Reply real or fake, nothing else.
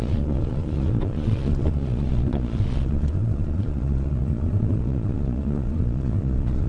fake